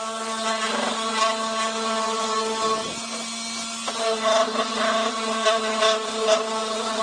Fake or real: real